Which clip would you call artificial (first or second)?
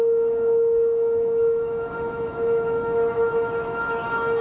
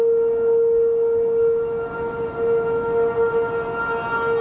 first